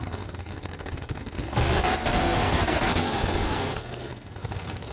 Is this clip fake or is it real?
fake